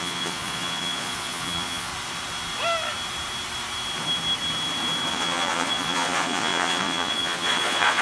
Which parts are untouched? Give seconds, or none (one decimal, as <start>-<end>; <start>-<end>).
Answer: 1.9-5.1